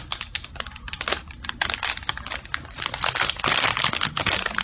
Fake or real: real